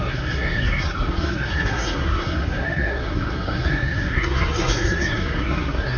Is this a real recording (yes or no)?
no